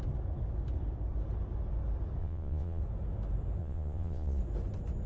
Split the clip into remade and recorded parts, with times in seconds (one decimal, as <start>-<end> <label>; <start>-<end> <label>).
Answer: 0.0-2.2 recorded; 2.2-2.8 remade; 2.8-3.6 recorded; 3.6-4.4 remade; 4.4-5.1 recorded